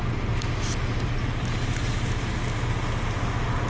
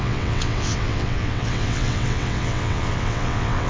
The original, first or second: first